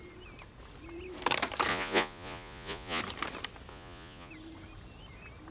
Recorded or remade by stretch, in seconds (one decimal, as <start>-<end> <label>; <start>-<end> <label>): 0.0-1.7 recorded; 1.7-3.0 remade; 3.0-3.7 recorded; 3.7-4.3 remade; 4.3-5.5 recorded